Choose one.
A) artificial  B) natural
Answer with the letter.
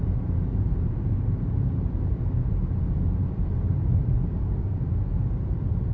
A